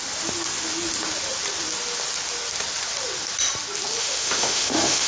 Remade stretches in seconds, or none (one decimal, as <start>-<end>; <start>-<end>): 4.0-5.1